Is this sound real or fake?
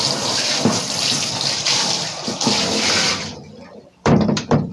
fake